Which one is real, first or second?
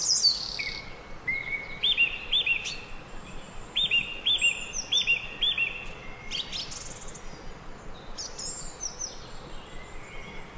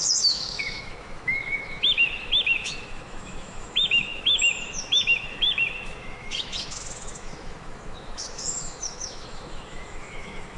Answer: first